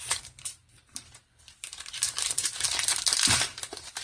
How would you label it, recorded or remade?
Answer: remade